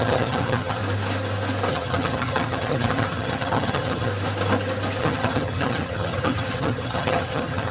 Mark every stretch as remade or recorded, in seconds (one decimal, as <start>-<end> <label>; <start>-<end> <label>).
0.0-0.8 remade; 0.8-1.7 recorded; 1.7-4.1 remade; 4.1-5.0 recorded; 5.0-7.7 remade